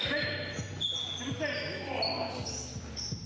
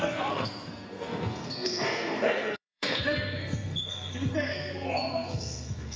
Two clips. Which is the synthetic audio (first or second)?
second